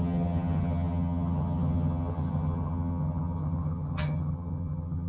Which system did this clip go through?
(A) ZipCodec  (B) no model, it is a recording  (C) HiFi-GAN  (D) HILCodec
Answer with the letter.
C